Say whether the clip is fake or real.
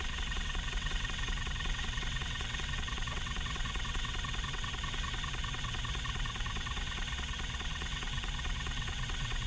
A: fake